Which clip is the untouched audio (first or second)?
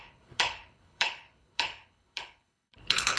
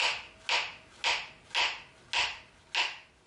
second